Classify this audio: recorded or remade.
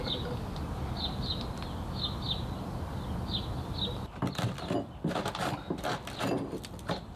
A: recorded